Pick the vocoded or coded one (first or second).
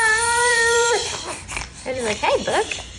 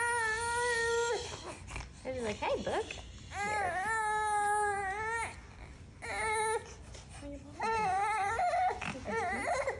first